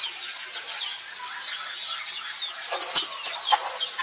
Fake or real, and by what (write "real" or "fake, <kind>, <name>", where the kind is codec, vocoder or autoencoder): real